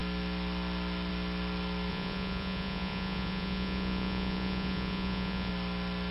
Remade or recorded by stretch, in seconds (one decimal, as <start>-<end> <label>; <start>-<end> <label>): 0.0-1.9 recorded; 1.9-5.5 remade; 5.5-6.1 recorded